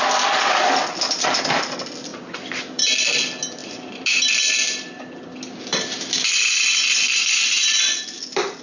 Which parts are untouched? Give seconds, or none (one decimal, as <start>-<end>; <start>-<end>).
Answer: 0.0-2.1; 2.8-3.6; 4.3-5.7; 6.6-8.6